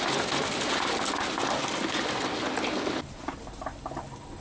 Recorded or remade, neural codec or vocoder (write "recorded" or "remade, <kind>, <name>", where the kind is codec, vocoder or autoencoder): recorded